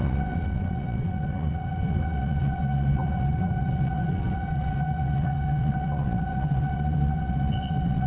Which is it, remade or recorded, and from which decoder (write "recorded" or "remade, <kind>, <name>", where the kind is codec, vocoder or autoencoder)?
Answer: remade, vocoder, WaveNeXt